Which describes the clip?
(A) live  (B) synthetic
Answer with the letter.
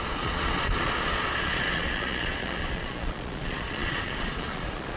B